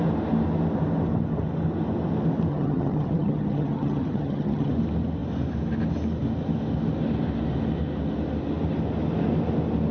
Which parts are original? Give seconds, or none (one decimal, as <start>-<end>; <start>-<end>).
0.0-2.5; 4.7-9.9

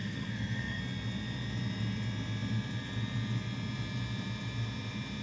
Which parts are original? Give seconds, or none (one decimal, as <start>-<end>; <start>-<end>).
0.8-5.2

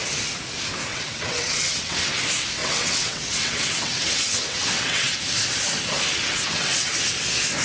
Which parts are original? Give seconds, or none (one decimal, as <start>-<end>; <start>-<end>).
0.0-0.9; 2.1-2.6; 5.2-6.2; 6.9-7.6

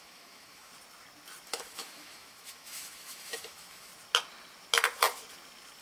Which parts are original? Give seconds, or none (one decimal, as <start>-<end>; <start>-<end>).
0.7-1.5; 3.9-5.8

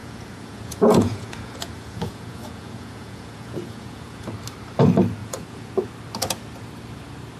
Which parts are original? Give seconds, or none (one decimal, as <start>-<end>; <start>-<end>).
4.3-5.2; 5.7-7.4